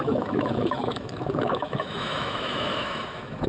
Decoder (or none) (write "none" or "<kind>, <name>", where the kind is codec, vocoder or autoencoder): autoencoder, DAC-VAE